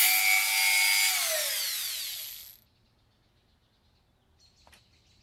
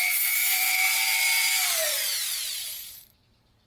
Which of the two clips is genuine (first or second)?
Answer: first